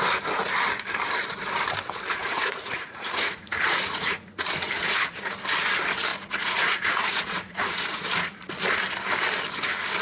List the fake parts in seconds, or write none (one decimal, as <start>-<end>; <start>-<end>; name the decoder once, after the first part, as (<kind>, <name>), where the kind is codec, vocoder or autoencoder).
2.2-5.4 (vocoder, Vocos); 6.1-8.5